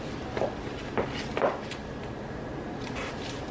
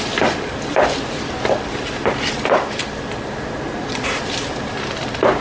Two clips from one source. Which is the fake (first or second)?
second